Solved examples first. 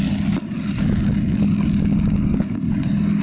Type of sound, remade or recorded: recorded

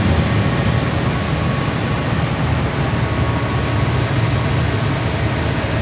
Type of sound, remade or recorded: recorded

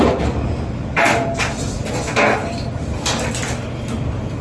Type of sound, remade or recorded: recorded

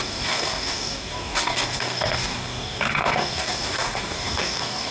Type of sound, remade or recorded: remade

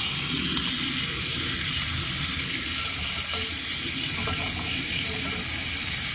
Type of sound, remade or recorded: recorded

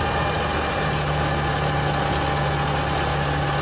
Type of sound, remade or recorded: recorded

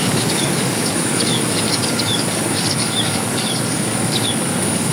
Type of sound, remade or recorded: remade